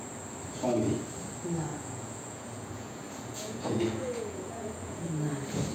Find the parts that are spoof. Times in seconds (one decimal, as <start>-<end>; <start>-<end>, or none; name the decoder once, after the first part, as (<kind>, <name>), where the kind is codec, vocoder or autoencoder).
1.7-5.1 (vocoder, Vocos)